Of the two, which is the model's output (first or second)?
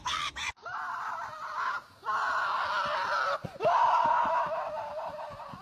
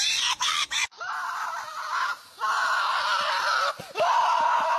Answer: second